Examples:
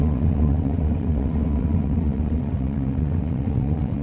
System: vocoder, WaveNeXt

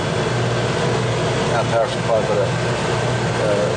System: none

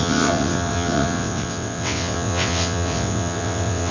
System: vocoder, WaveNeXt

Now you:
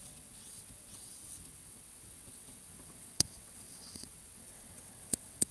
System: vocoder, WaveNeXt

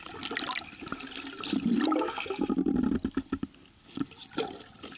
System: none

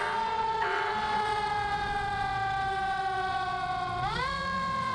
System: vocoder, WaveNeXt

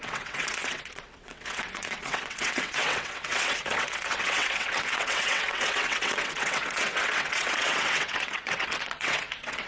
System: vocoder, WaveNeXt